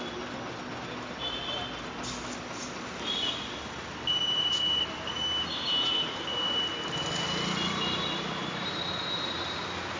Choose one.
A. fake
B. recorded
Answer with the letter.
B